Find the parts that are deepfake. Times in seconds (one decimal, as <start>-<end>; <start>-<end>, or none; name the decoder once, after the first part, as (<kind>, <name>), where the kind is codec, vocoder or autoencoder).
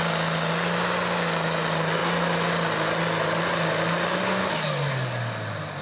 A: none